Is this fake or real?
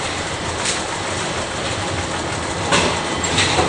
fake